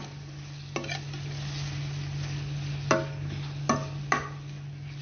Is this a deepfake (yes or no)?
no